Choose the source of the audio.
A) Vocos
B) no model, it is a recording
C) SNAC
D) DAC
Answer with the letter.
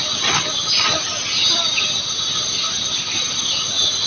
B